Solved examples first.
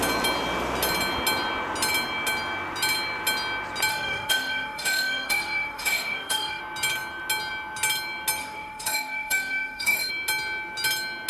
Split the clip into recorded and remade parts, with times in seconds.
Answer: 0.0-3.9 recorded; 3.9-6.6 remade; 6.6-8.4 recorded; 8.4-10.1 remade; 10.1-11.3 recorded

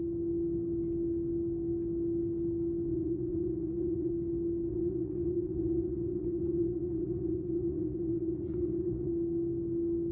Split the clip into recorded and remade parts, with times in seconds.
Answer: 0.0-2.9 recorded; 2.9-4.1 remade; 4.1-4.7 recorded; 4.7-9.1 remade; 9.1-10.1 recorded

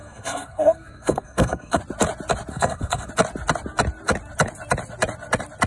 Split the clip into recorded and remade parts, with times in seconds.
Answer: 0.0-1.8 remade; 1.8-2.5 recorded; 2.5-3.1 remade; 3.1-5.7 recorded

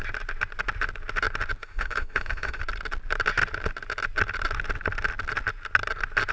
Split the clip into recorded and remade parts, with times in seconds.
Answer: 0.0-1.6 recorded; 1.6-2.6 remade; 2.6-6.3 recorded

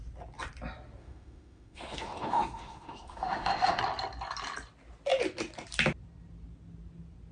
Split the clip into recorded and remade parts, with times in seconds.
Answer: 0.0-1.0 recorded; 1.0-3.8 remade; 3.8-7.3 recorded

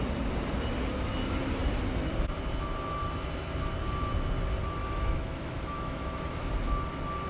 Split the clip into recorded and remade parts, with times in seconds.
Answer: 0.0-4.8 recorded; 4.8-6.5 remade; 6.5-7.3 recorded